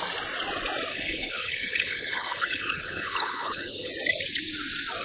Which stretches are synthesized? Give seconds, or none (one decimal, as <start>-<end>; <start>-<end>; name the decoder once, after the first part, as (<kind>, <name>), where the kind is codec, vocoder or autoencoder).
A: 0.9-3.9 (codec, HILCodec)